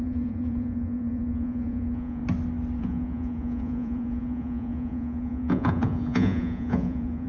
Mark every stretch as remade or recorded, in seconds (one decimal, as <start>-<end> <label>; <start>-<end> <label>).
0.0-2.2 remade; 2.2-2.8 recorded; 2.8-7.3 remade